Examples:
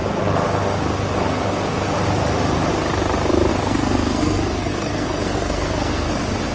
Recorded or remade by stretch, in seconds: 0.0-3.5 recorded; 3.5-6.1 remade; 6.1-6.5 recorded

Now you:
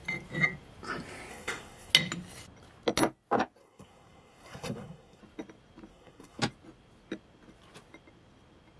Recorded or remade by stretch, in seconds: 0.0-1.3 recorded; 1.3-1.9 remade; 1.9-3.6 recorded; 3.6-5.2 remade; 5.2-5.9 recorded; 5.9-6.4 remade; 6.4-8.8 recorded

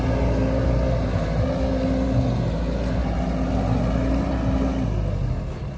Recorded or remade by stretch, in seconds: 0.0-5.8 recorded

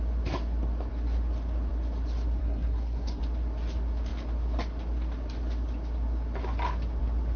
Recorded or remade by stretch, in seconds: 0.0-2.4 recorded; 2.4-3.2 remade; 3.2-7.4 recorded

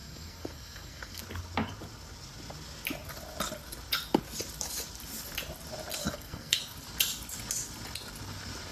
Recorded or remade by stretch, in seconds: 0.0-1.2 remade; 1.2-6.0 recorded; 6.0-6.6 remade; 6.6-8.7 recorded

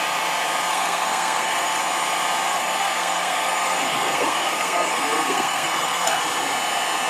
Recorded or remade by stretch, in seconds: 0.0-0.7 recorded; 0.7-1.8 remade; 1.8-2.5 recorded; 2.5-6.2 remade; 6.2-7.1 recorded

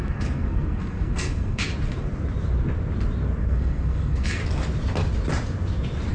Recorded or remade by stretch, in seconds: 0.0-1.7 remade; 1.7-3.4 recorded; 3.4-4.4 remade; 4.4-6.1 recorded